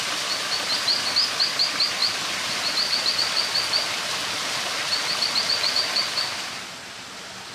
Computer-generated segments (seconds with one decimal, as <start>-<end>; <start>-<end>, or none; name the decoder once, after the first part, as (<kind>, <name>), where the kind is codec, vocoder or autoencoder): 2.0-6.5 (vocoder, BigVGAN v2)